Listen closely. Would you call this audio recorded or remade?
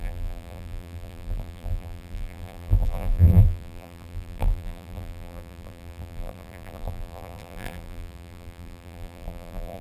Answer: remade